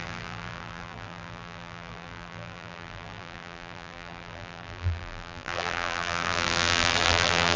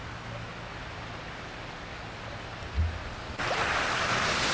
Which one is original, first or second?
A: second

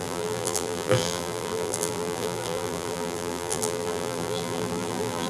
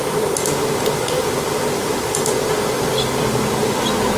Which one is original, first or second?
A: second